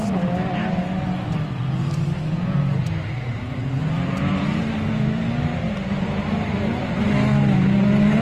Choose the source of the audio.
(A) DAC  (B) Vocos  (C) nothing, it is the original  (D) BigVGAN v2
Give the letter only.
C